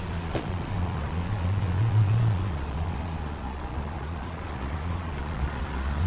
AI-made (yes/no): yes